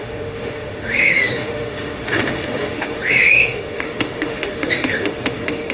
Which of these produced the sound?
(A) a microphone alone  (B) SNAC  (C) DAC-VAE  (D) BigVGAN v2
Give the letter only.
C